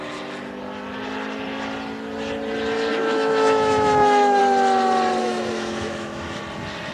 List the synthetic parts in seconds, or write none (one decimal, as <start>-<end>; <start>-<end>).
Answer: 2.9-4.4; 5.2-6.4